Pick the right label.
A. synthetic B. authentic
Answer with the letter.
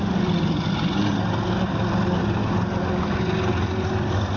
B